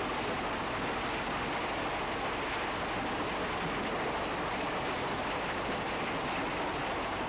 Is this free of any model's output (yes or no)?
yes